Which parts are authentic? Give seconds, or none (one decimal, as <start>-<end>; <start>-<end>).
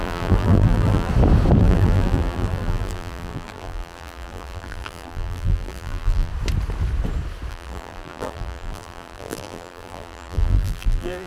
1.1-1.6; 6.3-7.5